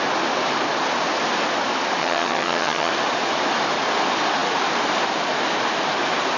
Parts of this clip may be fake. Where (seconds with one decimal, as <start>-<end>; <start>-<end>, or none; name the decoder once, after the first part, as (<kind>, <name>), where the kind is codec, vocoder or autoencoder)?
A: 2.0-2.9 (vocoder, HiFi-GAN)